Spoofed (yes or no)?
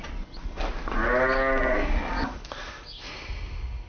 no